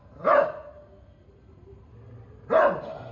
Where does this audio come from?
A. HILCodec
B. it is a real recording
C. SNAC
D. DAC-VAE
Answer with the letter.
B